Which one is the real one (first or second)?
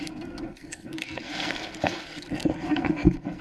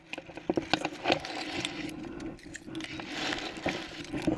second